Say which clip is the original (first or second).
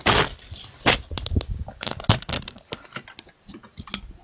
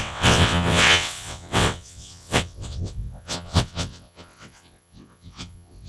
first